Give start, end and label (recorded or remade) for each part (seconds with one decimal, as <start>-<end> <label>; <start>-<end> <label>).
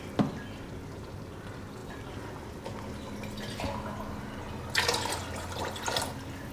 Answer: 0.0-5.2 recorded; 5.2-6.1 remade; 6.1-6.5 recorded